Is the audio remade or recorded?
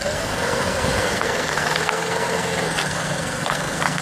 remade